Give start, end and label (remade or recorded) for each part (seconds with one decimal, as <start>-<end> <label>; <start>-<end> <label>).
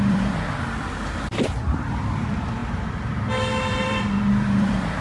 0.0-5.0 remade